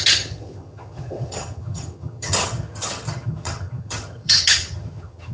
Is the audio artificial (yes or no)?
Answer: yes